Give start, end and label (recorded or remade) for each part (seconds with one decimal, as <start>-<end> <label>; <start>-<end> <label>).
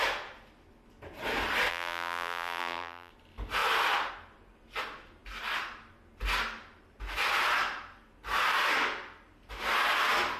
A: 0.0-1.7 recorded; 1.7-3.1 remade; 3.1-10.4 recorded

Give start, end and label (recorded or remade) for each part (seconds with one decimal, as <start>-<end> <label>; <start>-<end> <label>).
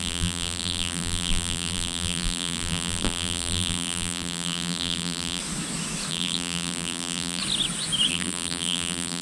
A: 0.0-5.4 remade; 5.4-6.1 recorded; 6.1-7.4 remade; 7.4-8.1 recorded; 8.1-9.2 remade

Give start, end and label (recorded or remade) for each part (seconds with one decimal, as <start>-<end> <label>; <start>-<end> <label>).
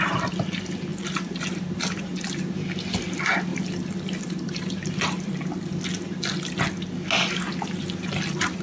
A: 0.0-0.9 recorded; 0.9-2.0 remade; 2.0-3.5 recorded; 3.5-5.3 remade; 5.3-8.6 recorded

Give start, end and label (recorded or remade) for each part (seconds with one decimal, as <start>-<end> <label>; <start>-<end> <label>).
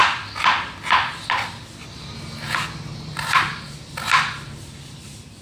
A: 0.0-2.9 recorded; 2.9-3.9 remade; 3.9-5.4 recorded